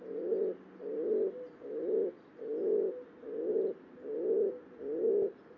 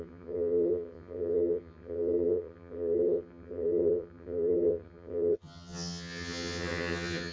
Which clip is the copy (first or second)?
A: second